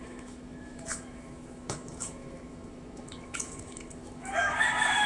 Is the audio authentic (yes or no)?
no